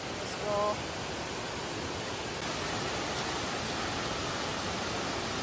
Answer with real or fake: real